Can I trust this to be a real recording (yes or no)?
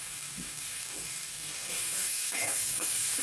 no